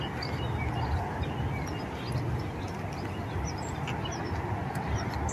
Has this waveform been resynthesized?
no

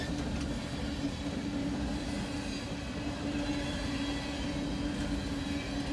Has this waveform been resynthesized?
no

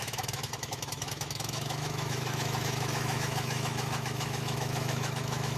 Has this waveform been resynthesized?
yes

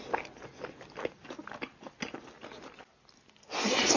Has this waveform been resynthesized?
no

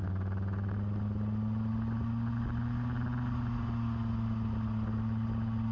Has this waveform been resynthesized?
no